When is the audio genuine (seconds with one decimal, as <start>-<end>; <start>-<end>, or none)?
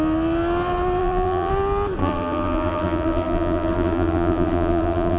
0.0-1.0; 1.5-2.0